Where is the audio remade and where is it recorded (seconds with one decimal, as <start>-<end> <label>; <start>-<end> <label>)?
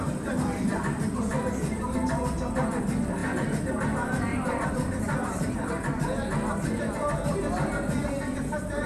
0.0-4.3 recorded; 4.3-5.5 remade; 5.5-8.9 recorded